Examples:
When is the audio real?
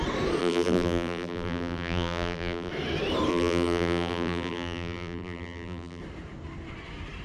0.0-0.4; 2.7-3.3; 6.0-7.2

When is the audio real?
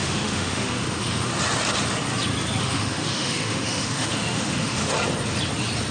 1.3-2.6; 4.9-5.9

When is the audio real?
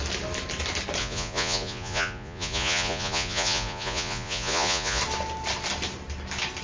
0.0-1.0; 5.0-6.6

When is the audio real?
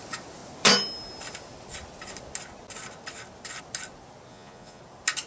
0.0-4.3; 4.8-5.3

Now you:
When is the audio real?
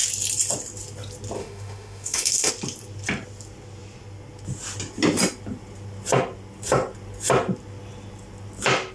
0.0-1.4; 2.5-8.9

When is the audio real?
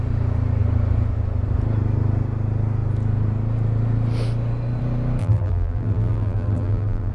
0.0-5.2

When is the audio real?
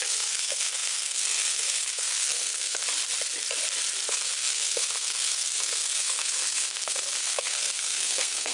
2.8-4.1